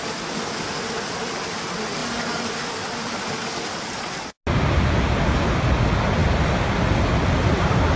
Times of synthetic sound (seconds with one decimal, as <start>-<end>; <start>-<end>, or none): none